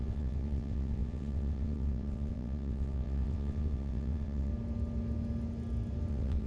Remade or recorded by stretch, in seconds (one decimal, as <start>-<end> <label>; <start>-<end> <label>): 0.0-4.5 remade; 4.5-6.1 recorded; 6.1-6.5 remade